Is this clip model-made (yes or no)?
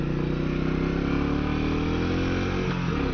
no